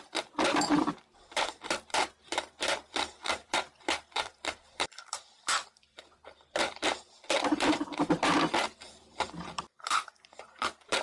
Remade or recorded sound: remade